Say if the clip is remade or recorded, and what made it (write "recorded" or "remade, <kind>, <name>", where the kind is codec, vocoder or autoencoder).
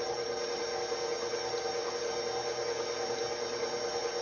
recorded